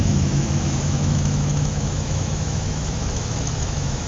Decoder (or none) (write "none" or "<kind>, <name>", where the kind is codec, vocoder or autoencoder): autoencoder, DAC-VAE